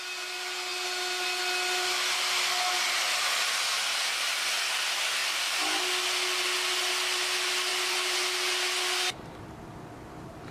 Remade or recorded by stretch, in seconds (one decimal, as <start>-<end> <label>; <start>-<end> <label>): 0.0-10.5 recorded